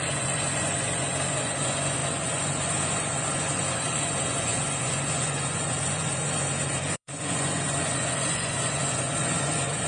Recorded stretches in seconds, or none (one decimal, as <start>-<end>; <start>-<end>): none